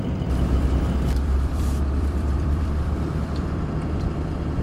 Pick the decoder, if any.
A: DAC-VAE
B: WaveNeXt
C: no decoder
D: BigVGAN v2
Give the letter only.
D